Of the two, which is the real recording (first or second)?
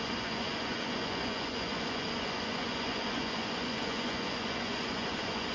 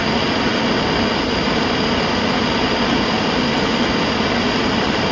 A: second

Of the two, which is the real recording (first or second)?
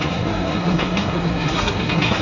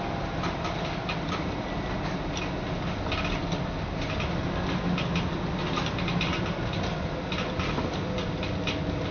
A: second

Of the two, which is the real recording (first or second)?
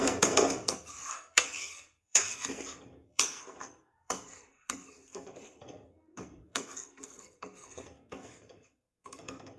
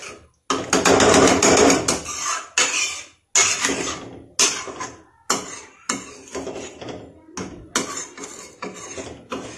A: second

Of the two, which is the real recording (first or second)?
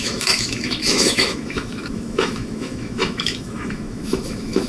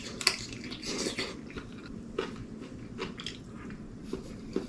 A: second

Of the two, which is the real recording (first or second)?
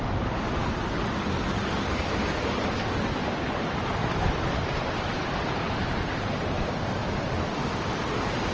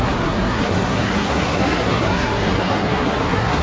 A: first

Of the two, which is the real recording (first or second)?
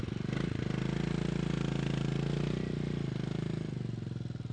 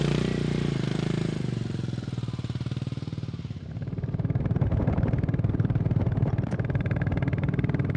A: first